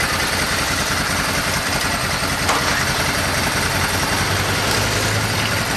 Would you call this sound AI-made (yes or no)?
no